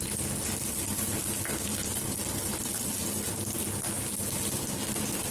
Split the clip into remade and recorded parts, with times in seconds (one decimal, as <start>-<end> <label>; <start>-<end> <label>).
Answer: 0.0-5.3 recorded

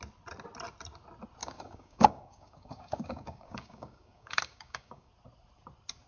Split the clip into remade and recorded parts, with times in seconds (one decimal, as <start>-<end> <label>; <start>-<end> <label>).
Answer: 0.0-1.4 recorded; 1.4-5.1 remade; 5.1-6.1 recorded

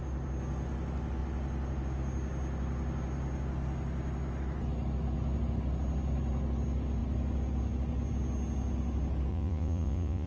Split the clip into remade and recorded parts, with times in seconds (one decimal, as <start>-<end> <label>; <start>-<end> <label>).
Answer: 0.0-9.3 recorded; 9.3-10.3 remade

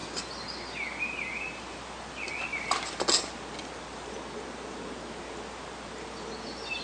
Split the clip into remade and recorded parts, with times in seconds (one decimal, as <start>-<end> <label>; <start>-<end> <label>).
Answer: 0.0-6.8 recorded

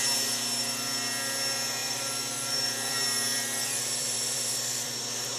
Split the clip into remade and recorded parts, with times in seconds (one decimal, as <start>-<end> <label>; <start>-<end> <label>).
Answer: 0.0-1.8 recorded; 1.8-5.0 remade; 5.0-5.4 recorded

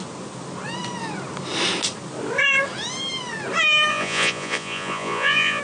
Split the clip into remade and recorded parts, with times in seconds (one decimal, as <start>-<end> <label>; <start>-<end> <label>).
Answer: 0.0-3.9 recorded; 3.9-5.6 remade

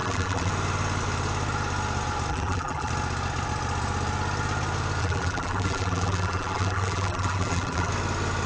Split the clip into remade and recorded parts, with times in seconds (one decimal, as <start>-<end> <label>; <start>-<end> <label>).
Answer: 0.0-0.5 remade; 0.5-2.3 recorded; 2.3-2.9 remade; 2.9-5.0 recorded; 5.0-7.9 remade; 7.9-8.5 recorded